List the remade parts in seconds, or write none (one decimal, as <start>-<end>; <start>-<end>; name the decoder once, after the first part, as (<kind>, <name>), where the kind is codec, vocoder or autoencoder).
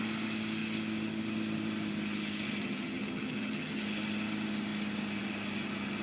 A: 2.6-3.8 (vocoder, HiFi-GAN)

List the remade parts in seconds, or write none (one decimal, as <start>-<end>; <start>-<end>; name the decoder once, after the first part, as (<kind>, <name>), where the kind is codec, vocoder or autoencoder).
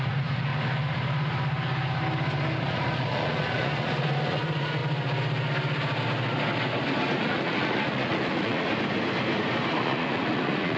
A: 0.0-0.5 (vocoder, Vocos); 2.6-4.8; 7.2-8.7; 9.7-10.8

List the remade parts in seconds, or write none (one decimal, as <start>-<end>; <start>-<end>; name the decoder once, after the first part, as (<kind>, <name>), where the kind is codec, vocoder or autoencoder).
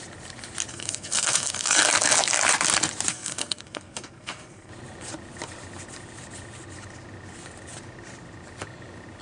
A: 0.7-1.8 (codec, SNAC); 3.1-4.7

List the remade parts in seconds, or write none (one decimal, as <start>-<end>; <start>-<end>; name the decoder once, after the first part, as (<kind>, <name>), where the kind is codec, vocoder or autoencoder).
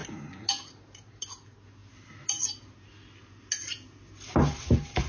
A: none